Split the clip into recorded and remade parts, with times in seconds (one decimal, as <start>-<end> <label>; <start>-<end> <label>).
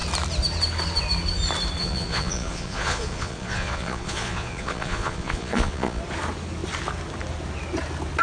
0.0-1.8 recorded; 1.8-6.0 remade; 6.0-8.2 recorded